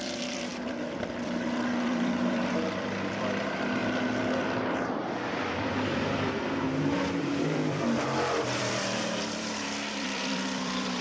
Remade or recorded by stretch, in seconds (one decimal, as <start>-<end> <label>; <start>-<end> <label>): 0.0-3.8 remade; 3.8-4.4 recorded; 4.4-11.0 remade